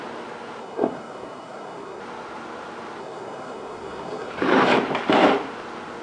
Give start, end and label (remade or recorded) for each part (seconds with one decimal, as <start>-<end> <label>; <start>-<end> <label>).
0.0-0.6 recorded; 0.6-2.0 remade; 2.0-3.0 recorded; 3.0-4.3 remade; 4.3-6.0 recorded